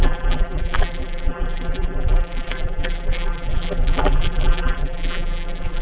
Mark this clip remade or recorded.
remade